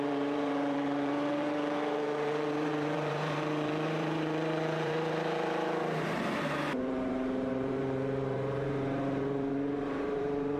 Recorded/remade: remade